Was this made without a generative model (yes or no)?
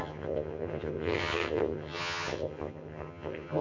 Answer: no